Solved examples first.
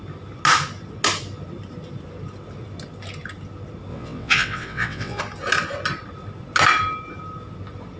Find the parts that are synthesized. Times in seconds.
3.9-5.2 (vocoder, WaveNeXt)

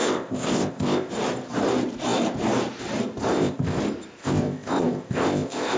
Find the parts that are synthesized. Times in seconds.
0.0-1.1 (codec, ZipCodec); 3.3-3.8; 4.2-5.8